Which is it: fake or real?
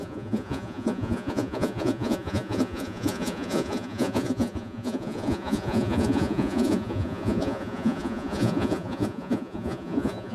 fake